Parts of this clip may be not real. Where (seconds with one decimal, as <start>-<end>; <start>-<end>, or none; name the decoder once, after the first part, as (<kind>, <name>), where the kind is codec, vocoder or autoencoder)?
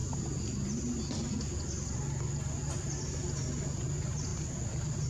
4.3-5.1 (vocoder, BigVGAN v2)